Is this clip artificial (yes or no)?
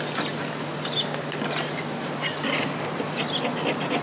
no